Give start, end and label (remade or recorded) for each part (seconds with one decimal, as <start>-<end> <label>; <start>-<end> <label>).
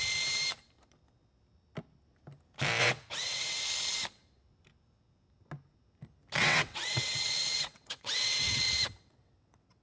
0.0-2.8 recorded; 2.8-3.6 remade; 3.6-6.4 recorded; 6.4-9.8 remade